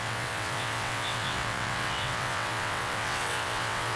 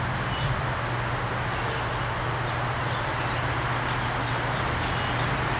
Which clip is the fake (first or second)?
first